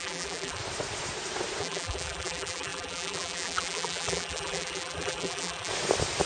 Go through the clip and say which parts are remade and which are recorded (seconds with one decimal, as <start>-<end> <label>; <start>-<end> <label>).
0.0-0.6 remade; 0.6-1.6 recorded; 1.6-5.7 remade; 5.7-6.3 recorded

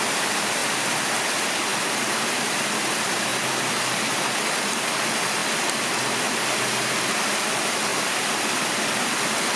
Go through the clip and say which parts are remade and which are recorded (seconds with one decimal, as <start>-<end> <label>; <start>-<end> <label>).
0.0-0.6 remade; 0.6-2.1 recorded; 2.1-5.4 remade; 5.4-7.1 recorded; 7.1-9.6 remade